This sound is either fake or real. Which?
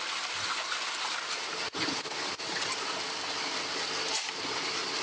real